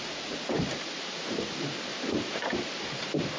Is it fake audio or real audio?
fake